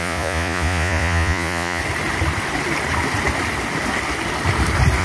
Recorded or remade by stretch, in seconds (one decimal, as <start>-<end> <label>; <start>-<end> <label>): 0.0-1.8 remade; 1.8-5.0 recorded